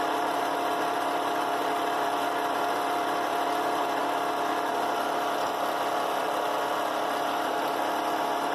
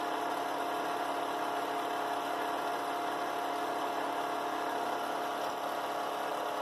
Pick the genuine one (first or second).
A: second